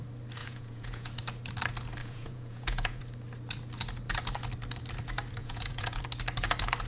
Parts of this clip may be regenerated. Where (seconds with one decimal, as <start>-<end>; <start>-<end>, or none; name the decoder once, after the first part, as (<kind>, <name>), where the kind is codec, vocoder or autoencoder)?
0.4-1.1 (vocoder, Vocos); 2.0-3.0; 5.4-6.0